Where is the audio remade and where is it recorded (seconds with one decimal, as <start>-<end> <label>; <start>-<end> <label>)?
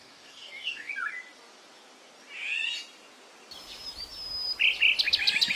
0.0-0.9 remade; 0.9-5.6 recorded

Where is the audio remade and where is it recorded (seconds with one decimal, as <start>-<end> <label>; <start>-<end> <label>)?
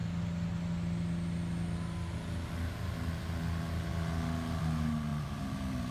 0.0-5.1 recorded; 5.1-5.9 remade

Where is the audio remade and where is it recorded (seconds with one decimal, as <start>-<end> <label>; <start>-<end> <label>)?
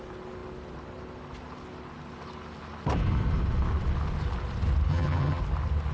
0.0-4.9 recorded; 4.9-5.4 remade; 5.4-5.9 recorded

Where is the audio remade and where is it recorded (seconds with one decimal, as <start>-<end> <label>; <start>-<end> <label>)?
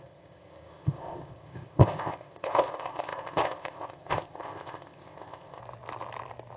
0.0-5.6 remade; 5.6-6.6 recorded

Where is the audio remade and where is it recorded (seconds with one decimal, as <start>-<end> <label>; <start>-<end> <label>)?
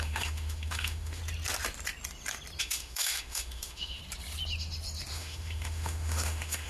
0.0-1.2 remade; 1.2-2.6 recorded; 2.6-4.0 remade; 4.0-5.1 recorded; 5.1-6.7 remade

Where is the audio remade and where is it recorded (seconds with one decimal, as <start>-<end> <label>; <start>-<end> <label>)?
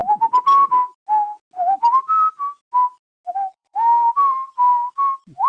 0.0-3.3 recorded; 3.3-5.5 remade